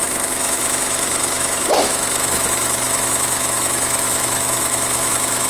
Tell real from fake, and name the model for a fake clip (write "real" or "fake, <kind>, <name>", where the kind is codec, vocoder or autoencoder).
fake, autoencoder, DAC-VAE